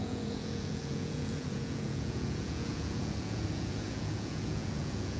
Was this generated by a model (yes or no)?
yes